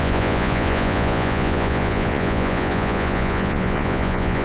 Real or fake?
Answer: fake